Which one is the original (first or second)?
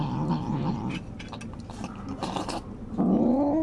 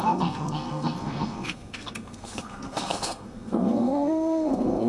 first